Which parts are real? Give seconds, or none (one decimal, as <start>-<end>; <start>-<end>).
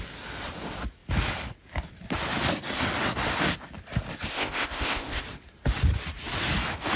0.0-4.3; 5.2-7.0